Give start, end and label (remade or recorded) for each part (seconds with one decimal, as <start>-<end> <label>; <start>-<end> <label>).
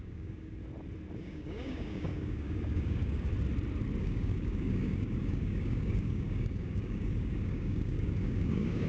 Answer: 0.0-0.6 remade; 0.6-1.2 recorded; 1.2-3.3 remade; 3.3-4.0 recorded; 4.0-8.9 remade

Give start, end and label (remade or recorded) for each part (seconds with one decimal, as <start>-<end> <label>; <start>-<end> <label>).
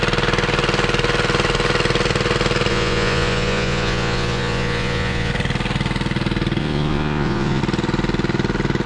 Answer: 0.0-2.7 recorded; 2.7-5.3 remade; 5.3-6.6 recorded; 6.6-7.6 remade; 7.6-8.9 recorded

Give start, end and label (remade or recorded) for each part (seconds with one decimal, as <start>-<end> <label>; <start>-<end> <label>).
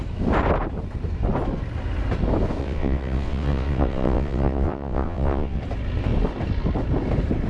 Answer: 0.0-2.6 recorded; 2.6-5.6 remade; 5.6-7.5 recorded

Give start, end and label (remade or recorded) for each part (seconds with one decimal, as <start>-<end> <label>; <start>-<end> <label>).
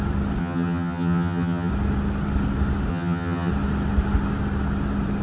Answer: 0.0-0.4 recorded; 0.4-1.7 remade; 1.7-2.9 recorded; 2.9-3.5 remade; 3.5-5.2 recorded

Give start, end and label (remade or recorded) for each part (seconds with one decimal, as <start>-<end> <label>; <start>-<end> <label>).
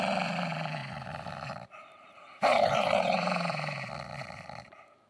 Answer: 0.0-0.8 recorded; 0.8-3.8 remade; 3.8-5.1 recorded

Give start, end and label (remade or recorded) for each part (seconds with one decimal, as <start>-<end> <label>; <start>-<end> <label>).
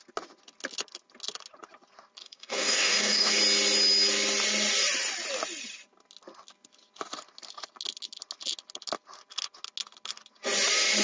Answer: 0.0-2.2 recorded; 2.2-3.4 remade; 3.4-11.0 recorded